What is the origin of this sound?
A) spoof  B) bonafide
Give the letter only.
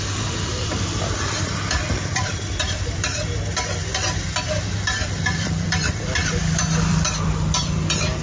A